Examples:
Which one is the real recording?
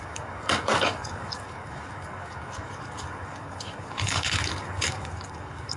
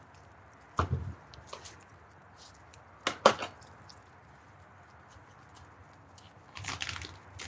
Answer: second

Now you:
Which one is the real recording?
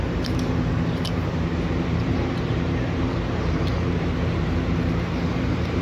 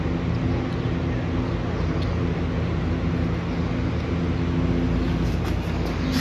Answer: second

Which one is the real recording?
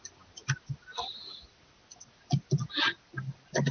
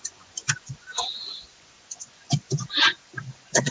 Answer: first